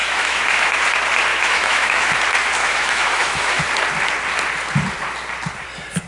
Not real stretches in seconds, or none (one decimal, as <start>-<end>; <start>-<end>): 0.0-0.8; 1.3-2.2; 2.6-3.6